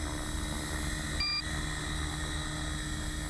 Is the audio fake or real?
real